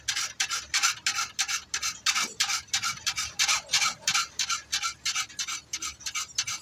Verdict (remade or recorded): recorded